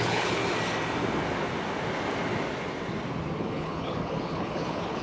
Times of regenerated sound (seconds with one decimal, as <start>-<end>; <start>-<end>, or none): 0.0-0.4; 3.4-5.0